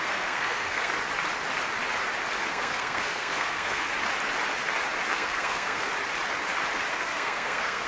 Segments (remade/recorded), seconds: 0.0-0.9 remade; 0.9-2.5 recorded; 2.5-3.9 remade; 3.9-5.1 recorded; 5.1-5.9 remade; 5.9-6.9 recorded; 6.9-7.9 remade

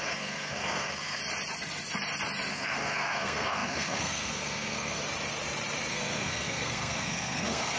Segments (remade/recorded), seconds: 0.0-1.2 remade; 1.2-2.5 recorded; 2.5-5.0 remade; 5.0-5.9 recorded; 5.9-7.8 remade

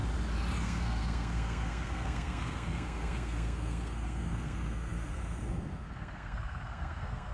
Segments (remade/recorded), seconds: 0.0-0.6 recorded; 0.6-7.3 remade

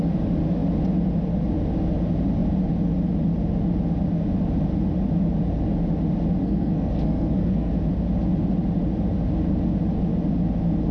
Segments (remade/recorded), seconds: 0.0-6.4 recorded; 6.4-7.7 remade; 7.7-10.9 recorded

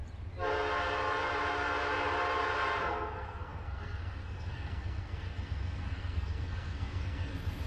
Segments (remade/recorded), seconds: 0.0-2.8 recorded; 2.8-7.7 remade

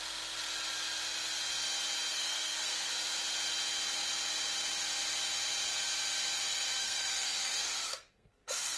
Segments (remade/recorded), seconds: 0.0-2.1 recorded; 2.1-2.9 remade; 2.9-6.8 recorded; 6.8-8.8 remade

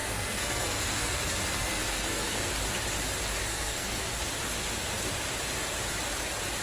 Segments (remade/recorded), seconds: 0.0-2.5 remade; 2.5-3.4 recorded; 3.4-4.1 remade; 4.1-6.6 recorded

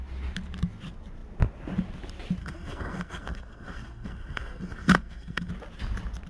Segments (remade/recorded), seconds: 0.0-2.4 recorded; 2.4-5.5 remade; 5.5-6.3 recorded